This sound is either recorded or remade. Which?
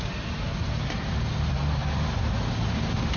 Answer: recorded